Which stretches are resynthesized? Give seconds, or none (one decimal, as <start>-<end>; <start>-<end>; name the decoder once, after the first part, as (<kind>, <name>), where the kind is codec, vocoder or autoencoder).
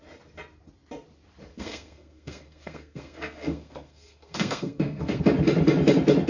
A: 1.5-5.2 (codec, SNAC)